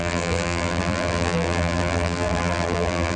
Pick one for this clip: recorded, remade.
remade